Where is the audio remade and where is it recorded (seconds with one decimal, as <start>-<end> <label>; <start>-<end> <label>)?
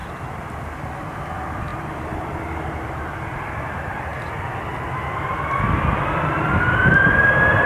0.0-4.1 remade; 4.1-6.9 recorded; 6.9-7.7 remade